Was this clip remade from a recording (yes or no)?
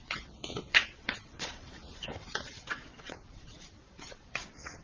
yes